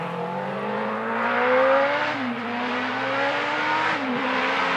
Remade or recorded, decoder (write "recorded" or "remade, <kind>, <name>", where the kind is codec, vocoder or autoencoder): remade, vocoder, BigVGAN v2